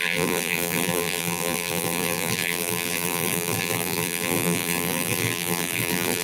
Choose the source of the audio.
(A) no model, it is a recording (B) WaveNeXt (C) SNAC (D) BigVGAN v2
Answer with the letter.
D